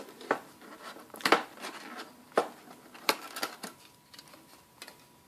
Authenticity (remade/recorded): recorded